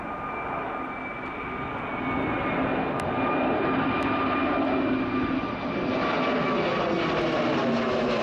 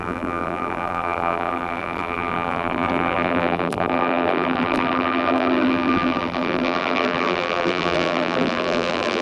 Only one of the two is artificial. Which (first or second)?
second